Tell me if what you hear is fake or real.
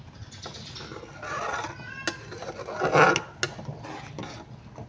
real